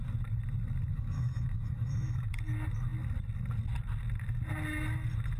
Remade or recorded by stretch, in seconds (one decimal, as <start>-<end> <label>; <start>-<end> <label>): 0.0-0.9 recorded; 0.9-2.4 remade; 2.4-5.4 recorded